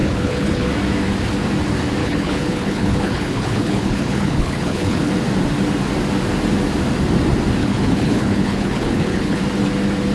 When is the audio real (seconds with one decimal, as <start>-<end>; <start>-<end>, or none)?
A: 0.7-2.0; 5.1-7.6; 9.4-10.1